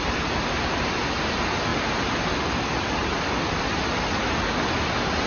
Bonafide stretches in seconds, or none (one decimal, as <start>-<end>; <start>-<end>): 0.0-5.3